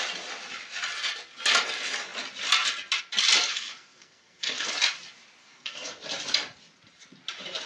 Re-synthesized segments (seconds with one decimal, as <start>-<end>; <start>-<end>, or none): 3.5-4.7; 5.4-6.0